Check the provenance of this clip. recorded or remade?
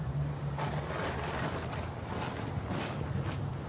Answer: recorded